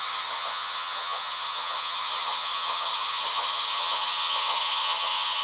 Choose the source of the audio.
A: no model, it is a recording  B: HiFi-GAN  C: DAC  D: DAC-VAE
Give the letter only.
B